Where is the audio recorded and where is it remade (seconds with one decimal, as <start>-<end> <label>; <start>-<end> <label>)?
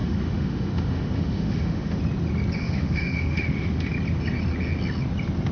0.0-2.0 remade; 2.0-2.6 recorded; 2.6-3.9 remade; 3.9-5.5 recorded